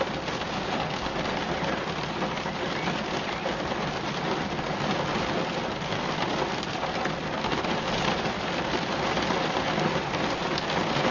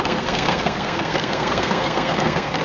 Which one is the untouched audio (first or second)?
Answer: first